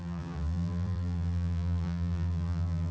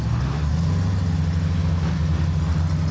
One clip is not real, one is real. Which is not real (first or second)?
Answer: first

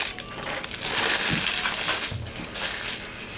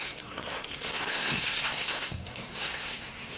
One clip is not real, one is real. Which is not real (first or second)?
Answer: second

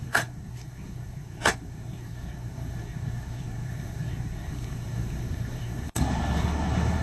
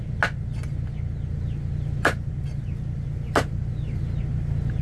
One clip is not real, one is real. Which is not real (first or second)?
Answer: first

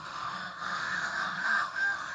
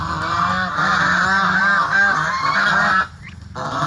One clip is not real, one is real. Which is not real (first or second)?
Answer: first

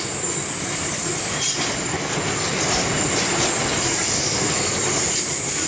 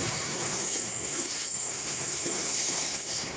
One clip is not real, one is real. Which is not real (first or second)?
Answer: second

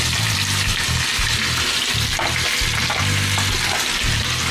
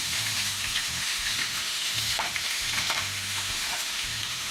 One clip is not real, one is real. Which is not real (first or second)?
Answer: second